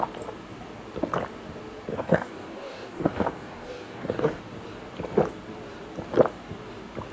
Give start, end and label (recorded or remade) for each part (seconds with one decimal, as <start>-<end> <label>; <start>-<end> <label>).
0.0-1.9 recorded; 1.9-4.4 remade; 4.4-7.1 recorded